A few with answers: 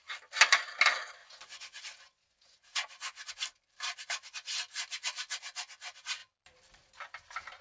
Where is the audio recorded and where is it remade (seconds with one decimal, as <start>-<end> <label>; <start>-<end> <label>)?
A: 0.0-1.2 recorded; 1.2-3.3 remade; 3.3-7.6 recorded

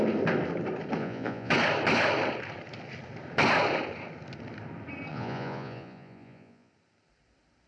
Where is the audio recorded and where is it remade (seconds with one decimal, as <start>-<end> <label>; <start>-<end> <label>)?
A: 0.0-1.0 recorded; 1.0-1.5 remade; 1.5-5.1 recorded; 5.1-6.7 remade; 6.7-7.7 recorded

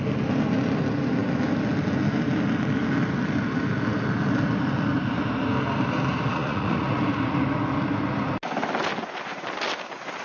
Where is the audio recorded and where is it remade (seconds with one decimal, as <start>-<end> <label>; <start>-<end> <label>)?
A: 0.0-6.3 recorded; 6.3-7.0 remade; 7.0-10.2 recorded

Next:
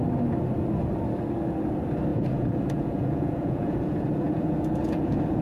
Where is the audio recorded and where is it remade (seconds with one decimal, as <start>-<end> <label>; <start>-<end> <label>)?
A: 0.0-2.1 recorded; 2.1-5.4 remade